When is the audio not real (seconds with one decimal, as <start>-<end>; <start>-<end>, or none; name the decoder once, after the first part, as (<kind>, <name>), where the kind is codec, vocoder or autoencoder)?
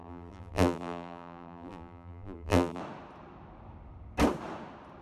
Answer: 0.0-2.8 (vocoder, BigVGAN v2)